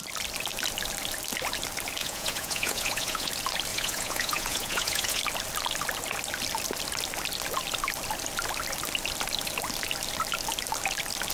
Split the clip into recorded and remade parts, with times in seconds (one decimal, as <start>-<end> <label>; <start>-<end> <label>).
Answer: 0.0-2.0 recorded; 2.0-3.3 remade; 3.3-3.7 recorded; 3.7-5.2 remade; 5.2-11.3 recorded